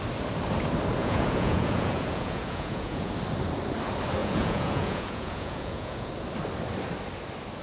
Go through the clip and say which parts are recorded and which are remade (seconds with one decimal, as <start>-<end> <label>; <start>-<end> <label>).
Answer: 0.0-1.0 recorded; 1.0-3.1 remade; 3.1-4.2 recorded; 4.2-6.1 remade; 6.1-7.6 recorded